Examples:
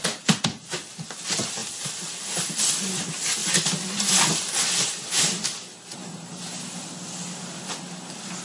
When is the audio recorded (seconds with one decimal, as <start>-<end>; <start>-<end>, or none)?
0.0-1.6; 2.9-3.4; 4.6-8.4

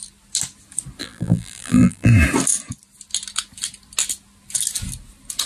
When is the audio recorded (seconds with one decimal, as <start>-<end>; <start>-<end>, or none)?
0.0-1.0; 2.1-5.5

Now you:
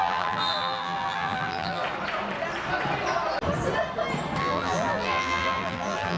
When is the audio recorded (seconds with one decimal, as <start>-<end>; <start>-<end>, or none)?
1.8-4.4

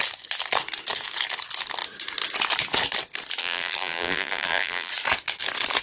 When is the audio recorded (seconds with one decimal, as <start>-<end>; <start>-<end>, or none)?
0.0-3.4; 4.9-5.8

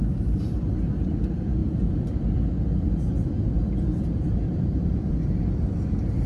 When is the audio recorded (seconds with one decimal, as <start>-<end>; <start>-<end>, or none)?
0.0-1.6; 2.2-3.9; 5.2-6.3

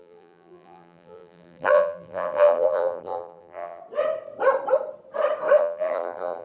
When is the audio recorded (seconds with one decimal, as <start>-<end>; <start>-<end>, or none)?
3.8-5.6

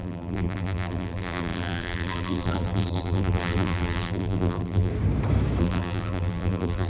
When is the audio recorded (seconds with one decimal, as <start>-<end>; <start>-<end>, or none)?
4.9-5.6

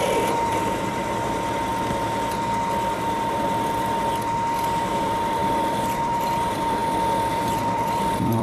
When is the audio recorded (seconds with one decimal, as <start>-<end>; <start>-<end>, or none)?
1.7-4.9; 6.8-7.3